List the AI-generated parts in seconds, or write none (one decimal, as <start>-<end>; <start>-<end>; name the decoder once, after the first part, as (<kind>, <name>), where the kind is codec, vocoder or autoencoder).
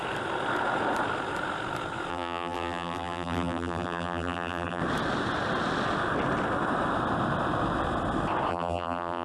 2.1-4.8 (vocoder, BigVGAN v2); 8.5-9.2